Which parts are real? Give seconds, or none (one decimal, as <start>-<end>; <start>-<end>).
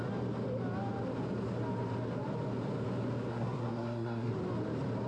0.0-3.3; 4.3-5.1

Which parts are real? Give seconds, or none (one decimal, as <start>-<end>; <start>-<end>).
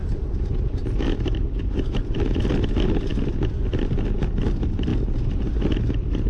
0.0-6.3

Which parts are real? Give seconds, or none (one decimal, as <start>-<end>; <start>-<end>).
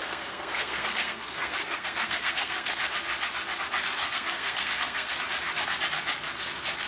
2.8-4.0; 5.2-6.9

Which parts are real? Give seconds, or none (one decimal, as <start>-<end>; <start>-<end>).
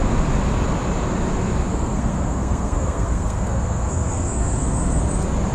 0.0-1.7; 5.0-5.5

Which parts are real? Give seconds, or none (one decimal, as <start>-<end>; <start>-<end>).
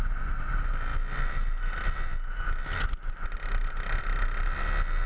0.0-5.1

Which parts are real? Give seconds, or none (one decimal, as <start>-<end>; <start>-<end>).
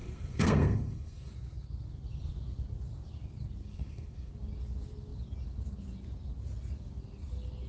1.3-3.6; 4.3-7.7